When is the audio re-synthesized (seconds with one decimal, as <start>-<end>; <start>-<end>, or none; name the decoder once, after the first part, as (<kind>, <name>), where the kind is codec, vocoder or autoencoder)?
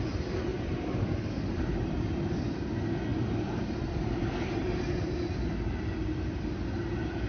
0.5-2.4 (vocoder, BigVGAN v2); 3.1-4.2